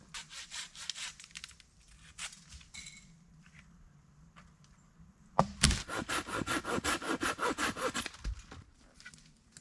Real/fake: real